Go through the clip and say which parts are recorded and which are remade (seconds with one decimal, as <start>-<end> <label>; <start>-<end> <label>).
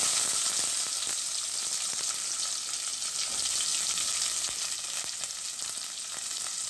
0.0-6.7 recorded